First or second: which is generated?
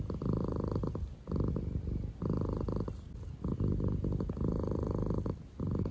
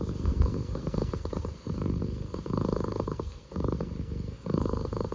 second